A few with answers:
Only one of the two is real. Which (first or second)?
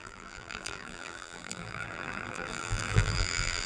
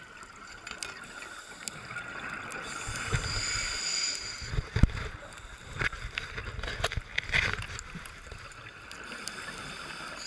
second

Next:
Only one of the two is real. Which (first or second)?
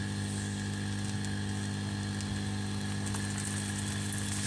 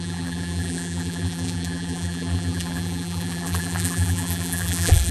first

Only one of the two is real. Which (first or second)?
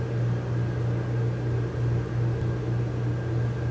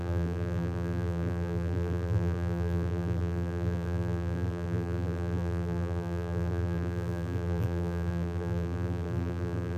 first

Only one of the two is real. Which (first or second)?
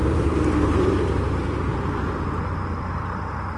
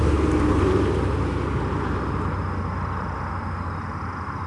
second